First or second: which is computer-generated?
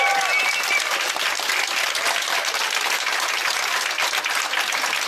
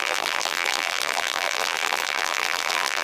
second